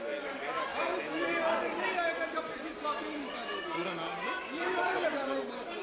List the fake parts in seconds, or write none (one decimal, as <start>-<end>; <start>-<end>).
none

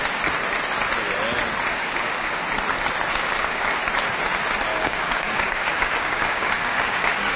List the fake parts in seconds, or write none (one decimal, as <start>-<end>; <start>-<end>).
1.7-2.4; 3.1-3.8; 4.7-7.4

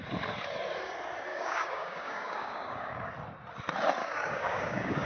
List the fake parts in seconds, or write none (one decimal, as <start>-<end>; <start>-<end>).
1.3-3.1; 4.0-5.1